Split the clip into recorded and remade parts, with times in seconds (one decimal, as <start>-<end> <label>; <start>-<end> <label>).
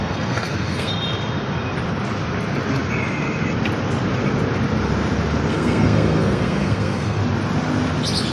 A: 0.0-0.9 remade; 0.9-5.5 recorded; 5.5-7.2 remade; 7.2-8.3 recorded